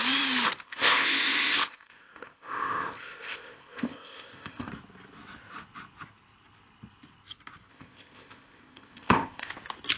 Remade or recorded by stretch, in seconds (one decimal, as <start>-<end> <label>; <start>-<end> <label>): 0.0-0.6 recorded; 0.6-4.7 remade; 4.7-7.7 recorded; 7.7-9.5 remade; 9.5-10.0 recorded